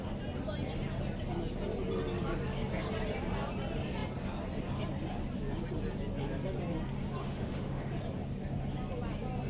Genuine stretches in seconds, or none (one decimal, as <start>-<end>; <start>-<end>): 0.0-7.2; 7.9-9.5